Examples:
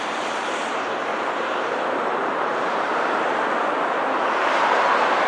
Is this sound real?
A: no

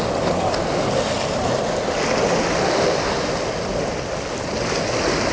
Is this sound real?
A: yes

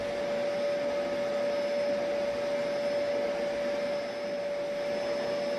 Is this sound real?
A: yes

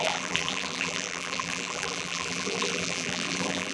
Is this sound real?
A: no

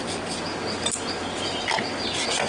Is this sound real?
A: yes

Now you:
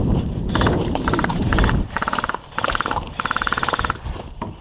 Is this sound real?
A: no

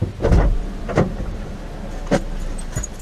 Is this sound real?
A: yes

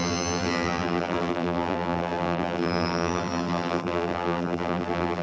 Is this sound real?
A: no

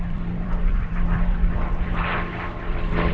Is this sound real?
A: no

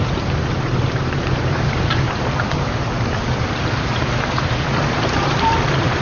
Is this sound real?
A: no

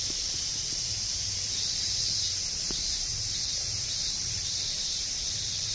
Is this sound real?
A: no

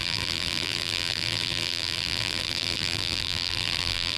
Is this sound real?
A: no